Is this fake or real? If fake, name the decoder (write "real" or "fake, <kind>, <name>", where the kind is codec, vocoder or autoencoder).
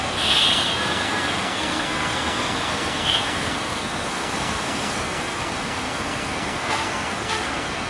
fake, codec, SNAC